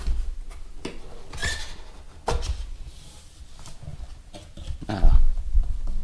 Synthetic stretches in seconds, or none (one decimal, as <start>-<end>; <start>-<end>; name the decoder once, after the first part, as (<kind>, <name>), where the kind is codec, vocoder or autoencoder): none